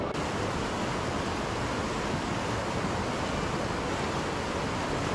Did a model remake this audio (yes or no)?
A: no